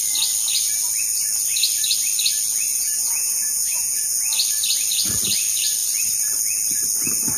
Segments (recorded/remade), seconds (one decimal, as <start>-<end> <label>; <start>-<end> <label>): 0.0-2.7 recorded; 2.7-4.2 remade; 4.2-7.4 recorded